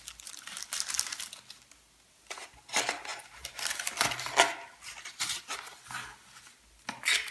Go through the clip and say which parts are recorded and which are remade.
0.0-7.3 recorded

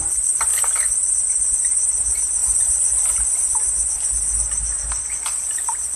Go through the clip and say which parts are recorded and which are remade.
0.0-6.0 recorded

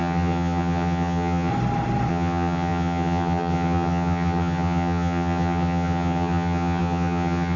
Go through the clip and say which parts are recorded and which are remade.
0.0-1.5 remade; 1.5-2.1 recorded; 2.1-7.6 remade